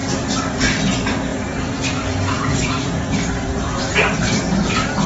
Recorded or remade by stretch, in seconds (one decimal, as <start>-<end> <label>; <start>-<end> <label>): 0.0-1.3 recorded; 1.3-4.4 remade; 4.4-5.1 recorded